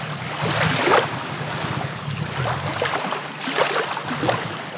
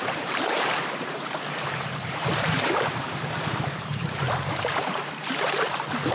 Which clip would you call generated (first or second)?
second